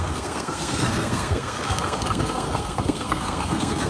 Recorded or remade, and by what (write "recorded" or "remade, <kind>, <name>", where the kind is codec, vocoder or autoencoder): remade, codec, SNAC